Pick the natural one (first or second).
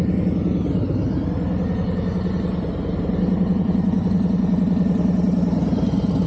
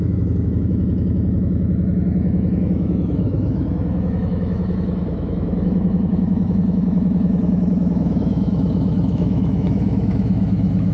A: first